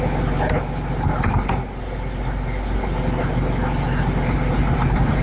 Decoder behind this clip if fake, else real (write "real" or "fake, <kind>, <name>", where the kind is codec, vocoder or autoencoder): real